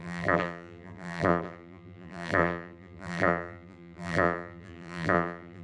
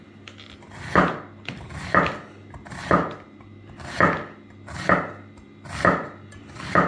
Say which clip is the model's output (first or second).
first